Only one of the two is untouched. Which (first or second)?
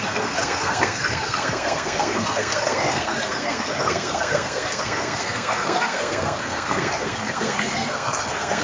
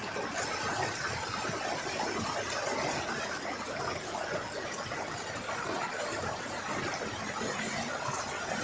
second